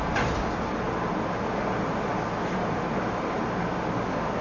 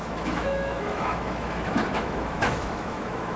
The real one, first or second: first